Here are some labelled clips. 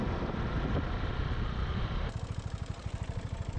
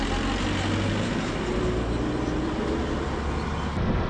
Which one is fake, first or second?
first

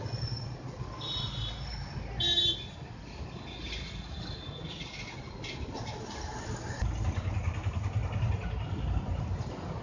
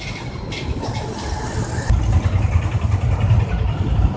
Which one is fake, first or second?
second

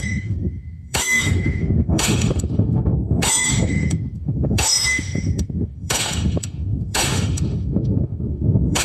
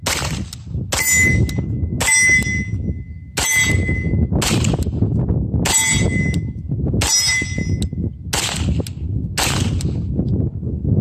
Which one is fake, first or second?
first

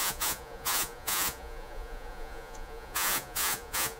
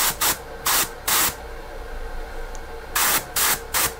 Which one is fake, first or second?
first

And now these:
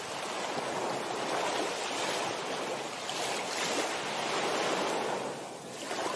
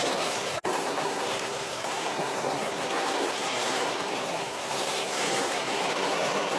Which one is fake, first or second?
second